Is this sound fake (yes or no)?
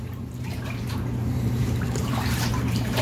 yes